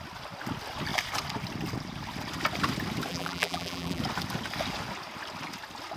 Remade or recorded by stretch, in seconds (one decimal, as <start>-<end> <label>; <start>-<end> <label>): 0.0-3.1 recorded; 3.1-4.0 remade; 4.0-6.0 recorded